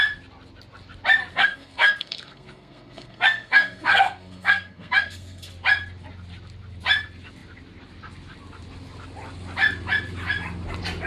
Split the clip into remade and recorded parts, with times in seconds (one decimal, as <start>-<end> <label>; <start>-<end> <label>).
0.0-1.3 recorded; 1.3-5.5 remade; 5.5-11.1 recorded